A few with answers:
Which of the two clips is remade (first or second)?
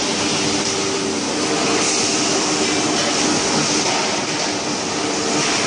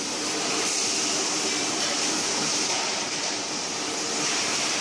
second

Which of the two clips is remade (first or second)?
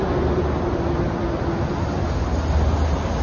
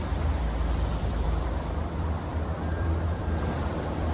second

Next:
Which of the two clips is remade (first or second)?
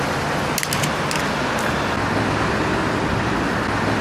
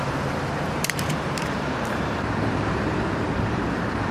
second